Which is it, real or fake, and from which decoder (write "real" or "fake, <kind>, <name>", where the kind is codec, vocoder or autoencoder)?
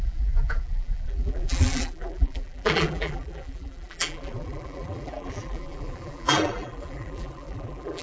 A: fake, vocoder, BigVGAN v2